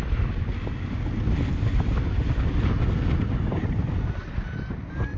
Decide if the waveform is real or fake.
real